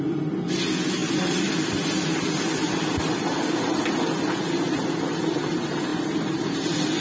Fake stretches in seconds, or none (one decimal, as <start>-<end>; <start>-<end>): none